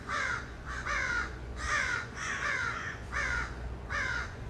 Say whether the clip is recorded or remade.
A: remade